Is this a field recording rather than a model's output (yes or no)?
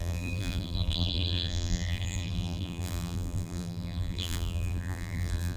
no